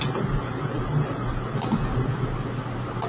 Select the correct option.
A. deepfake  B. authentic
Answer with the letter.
B